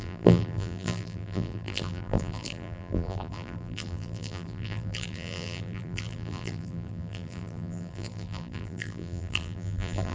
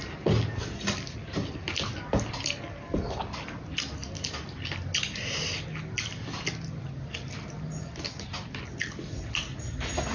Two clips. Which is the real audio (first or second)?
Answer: second